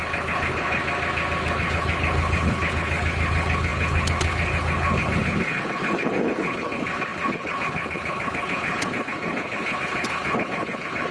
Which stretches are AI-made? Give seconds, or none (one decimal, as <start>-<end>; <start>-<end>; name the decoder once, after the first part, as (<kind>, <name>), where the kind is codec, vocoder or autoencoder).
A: 0.0-0.8 (codec, HILCodec); 1.5-11.1